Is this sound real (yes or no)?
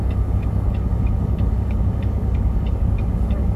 no